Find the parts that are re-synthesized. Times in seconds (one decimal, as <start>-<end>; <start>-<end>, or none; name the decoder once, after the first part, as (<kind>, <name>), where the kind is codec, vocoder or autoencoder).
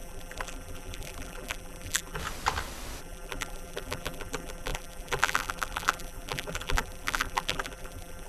0.0-2.2 (vocoder, BigVGAN v2); 3.0-8.3